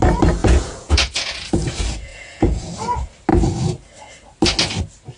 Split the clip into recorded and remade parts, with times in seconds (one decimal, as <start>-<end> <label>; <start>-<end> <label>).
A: 0.0-0.4 recorded; 0.4-1.4 remade; 1.4-2.1 recorded; 2.1-2.7 remade; 2.7-5.2 recorded